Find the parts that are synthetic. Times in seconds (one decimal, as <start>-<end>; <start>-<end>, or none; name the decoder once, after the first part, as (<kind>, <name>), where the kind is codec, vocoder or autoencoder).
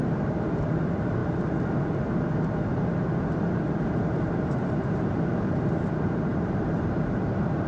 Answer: 0.0-1.2 (vocoder, BigVGAN v2); 3.5-7.7